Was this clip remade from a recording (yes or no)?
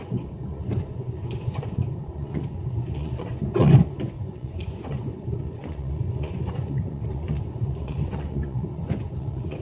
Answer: yes